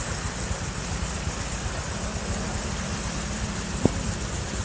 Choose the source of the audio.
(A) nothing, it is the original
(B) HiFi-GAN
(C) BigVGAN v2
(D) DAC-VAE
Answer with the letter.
A